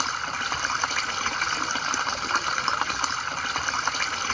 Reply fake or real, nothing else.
fake